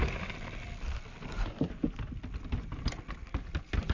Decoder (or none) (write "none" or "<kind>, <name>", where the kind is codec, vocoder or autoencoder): none